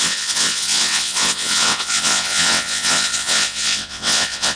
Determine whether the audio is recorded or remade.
remade